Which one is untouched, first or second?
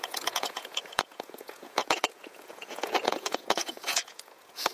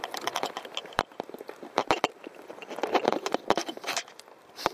second